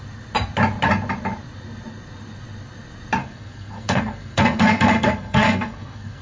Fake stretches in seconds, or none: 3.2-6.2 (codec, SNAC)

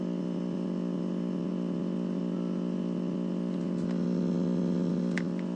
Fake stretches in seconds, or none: none